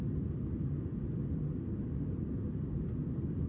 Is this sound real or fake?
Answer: real